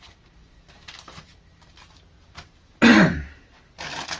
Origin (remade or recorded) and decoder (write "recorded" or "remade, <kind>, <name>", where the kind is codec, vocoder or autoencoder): recorded